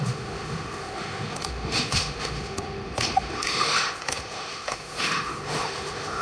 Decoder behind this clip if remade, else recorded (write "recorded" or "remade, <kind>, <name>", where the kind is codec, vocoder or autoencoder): remade, autoencoder, DAC-VAE